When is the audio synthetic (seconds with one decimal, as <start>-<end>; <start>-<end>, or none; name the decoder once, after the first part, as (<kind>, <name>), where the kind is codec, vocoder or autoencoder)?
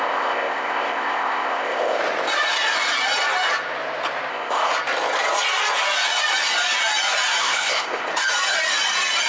0.0-2.0 (codec, ZipCodec); 4.3-4.7; 7.4-8.1